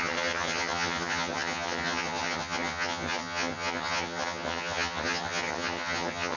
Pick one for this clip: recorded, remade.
remade